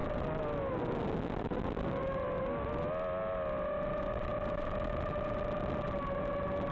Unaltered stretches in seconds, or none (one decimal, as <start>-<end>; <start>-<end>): 0.0-6.7